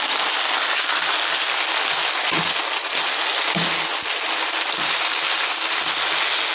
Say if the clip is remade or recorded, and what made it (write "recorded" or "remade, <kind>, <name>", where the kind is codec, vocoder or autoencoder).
recorded